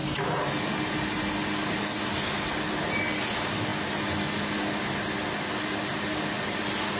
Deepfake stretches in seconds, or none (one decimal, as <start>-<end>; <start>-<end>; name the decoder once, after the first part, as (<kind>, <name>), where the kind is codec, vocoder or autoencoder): none